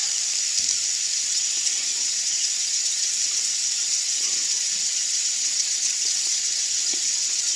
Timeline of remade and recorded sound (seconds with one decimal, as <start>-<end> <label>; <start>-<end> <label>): 0.0-1.3 recorded; 1.3-7.6 remade